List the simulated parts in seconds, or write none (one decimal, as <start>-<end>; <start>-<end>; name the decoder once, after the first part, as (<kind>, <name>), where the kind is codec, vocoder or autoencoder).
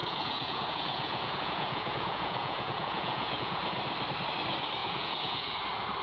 0.0-3.6 (vocoder, Vocos); 4.8-5.6